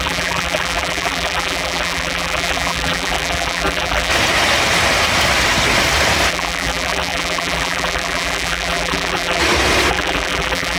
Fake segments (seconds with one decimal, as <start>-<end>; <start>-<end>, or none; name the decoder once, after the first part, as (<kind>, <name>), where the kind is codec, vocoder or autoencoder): 0.0-4.1 (vocoder, BigVGAN v2); 6.3-9.4; 9.9-10.8